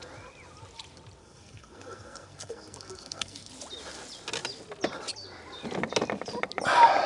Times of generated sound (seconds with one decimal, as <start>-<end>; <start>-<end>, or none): 1.2-3.5